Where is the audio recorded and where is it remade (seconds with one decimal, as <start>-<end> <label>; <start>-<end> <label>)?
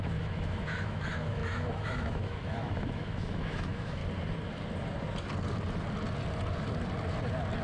0.0-4.0 remade; 4.0-7.6 recorded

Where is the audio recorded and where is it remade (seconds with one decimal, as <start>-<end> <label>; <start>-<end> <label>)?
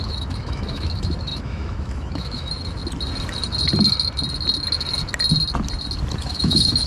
0.0-2.8 remade; 2.8-6.2 recorded; 6.2-6.9 remade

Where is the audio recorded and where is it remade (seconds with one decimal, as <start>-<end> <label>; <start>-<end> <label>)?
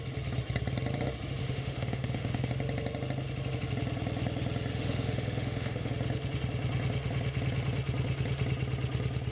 0.0-1.4 recorded; 1.4-2.5 remade; 2.5-4.7 recorded; 4.7-5.9 remade; 5.9-9.3 recorded